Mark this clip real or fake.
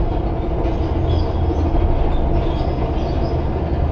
real